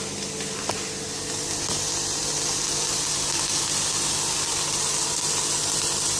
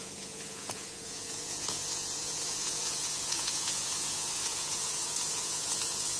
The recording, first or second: first